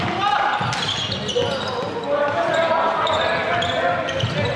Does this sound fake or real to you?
real